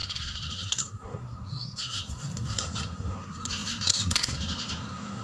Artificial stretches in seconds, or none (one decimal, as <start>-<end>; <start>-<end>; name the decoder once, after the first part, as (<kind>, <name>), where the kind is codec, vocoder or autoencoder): 0.0-5.2 (codec, SNAC)